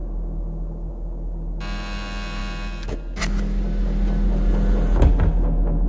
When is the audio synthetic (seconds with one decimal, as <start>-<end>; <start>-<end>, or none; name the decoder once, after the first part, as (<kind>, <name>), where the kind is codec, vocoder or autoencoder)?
none